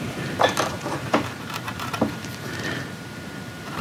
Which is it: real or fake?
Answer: fake